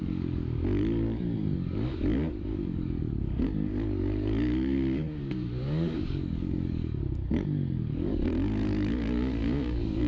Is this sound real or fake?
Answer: fake